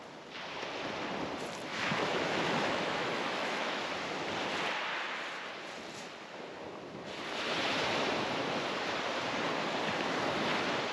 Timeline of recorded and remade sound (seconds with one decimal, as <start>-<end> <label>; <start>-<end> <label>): 0.0-1.7 recorded; 1.7-3.8 remade; 3.8-10.9 recorded